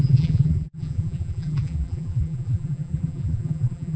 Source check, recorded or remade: remade